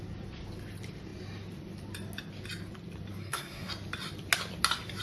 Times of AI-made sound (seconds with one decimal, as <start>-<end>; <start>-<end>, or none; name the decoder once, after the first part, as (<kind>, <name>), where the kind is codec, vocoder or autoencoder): 3.2-3.7 (codec, SNAC)